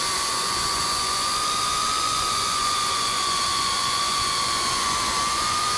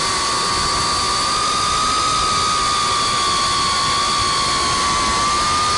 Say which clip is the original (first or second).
second